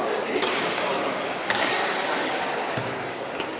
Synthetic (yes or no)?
yes